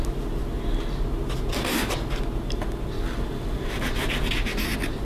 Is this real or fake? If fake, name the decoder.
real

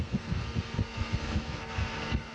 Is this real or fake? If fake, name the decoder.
fake, codec, SNAC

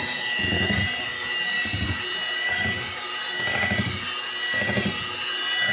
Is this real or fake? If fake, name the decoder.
real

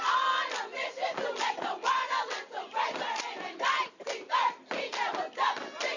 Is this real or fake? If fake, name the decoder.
real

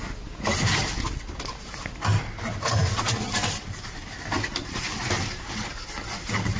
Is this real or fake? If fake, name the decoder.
real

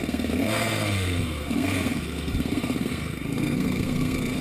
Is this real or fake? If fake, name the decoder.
fake, codec, SNAC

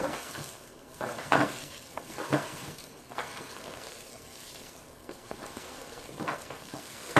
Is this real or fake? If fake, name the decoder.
fake, codec, SNAC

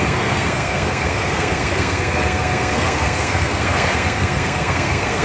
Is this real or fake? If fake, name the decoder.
fake, codec, SNAC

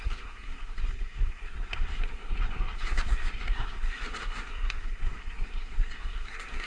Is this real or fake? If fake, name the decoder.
fake, codec, SNAC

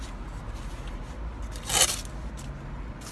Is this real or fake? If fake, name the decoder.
real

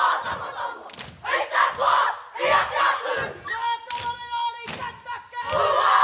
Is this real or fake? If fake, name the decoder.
real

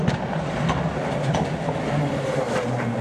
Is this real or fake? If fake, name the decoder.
real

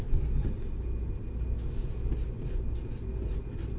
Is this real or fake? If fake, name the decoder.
real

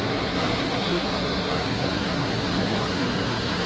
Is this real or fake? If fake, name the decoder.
fake, codec, SNAC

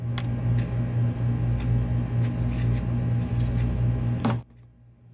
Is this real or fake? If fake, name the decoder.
real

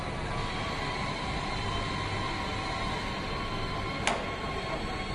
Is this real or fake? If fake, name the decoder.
real